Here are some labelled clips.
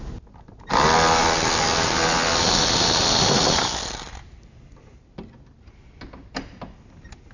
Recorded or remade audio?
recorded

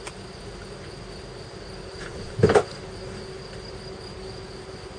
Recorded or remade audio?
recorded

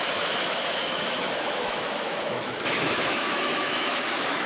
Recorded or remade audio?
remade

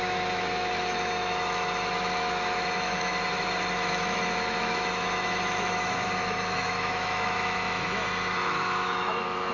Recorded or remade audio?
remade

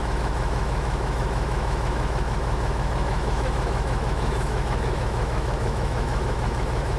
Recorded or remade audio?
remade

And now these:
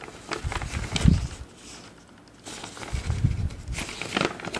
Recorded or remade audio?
recorded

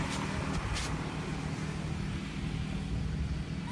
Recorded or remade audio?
recorded